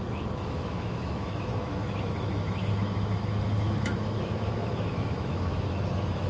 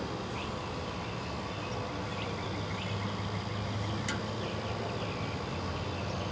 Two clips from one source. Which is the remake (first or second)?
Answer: first